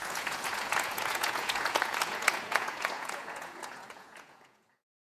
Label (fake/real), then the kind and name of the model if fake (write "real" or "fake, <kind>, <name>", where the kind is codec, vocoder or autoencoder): fake, vocoder, Vocos